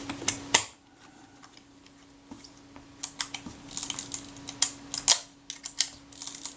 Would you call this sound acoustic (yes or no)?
yes